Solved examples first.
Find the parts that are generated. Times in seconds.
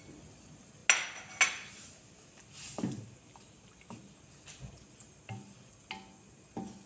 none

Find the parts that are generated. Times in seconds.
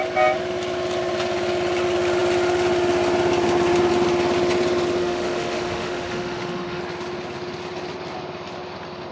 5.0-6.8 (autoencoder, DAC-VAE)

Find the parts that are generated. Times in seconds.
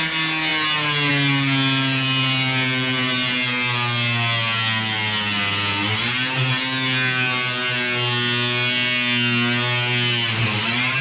none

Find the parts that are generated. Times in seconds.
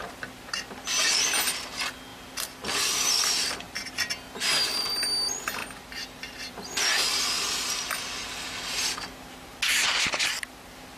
2.1-3.1 (vocoder, BigVGAN v2); 5.6-6.5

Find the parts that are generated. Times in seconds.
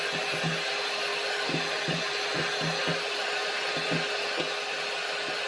2.8-3.7 (vocoder, BigVGAN v2)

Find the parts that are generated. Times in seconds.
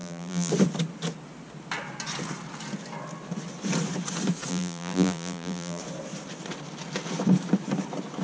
0.0-0.5 (vocoder, BigVGAN v2); 4.5-5.8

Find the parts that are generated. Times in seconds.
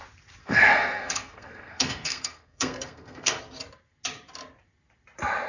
0.4-3.4 (codec, SNAC)